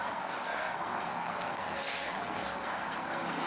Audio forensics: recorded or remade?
remade